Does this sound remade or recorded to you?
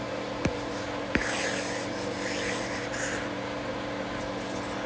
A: recorded